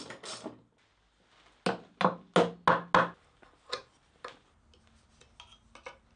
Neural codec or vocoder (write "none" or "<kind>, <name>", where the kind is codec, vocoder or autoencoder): none